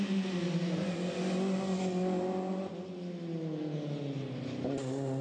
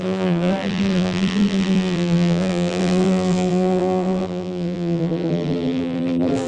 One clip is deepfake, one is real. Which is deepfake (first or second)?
second